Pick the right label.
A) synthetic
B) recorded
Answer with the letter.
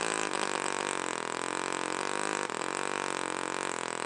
B